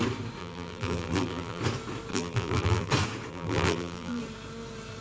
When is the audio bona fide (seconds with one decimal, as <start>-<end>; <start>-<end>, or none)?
0.0-0.4; 1.6-2.1; 2.9-3.3; 4.2-5.0